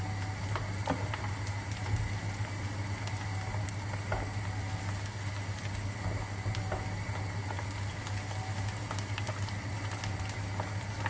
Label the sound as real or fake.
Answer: real